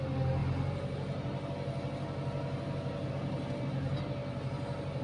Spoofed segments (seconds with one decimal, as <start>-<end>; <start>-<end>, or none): none

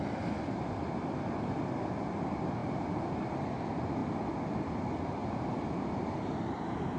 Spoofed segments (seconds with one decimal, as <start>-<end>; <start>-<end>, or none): 2.6-3.2

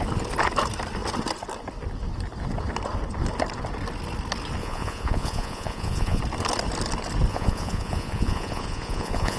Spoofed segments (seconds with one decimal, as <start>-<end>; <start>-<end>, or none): 4.6-6.2; 7.3-9.4

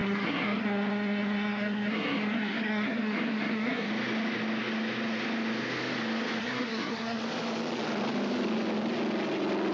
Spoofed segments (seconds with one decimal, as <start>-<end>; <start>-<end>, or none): 0.0-3.9; 6.4-7.2